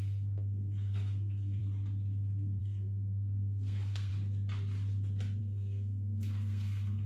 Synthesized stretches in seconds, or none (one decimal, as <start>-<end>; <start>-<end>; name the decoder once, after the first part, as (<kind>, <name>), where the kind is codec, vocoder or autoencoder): 0.0-1.6 (codec, SNAC); 2.6-4.1; 5.4-7.1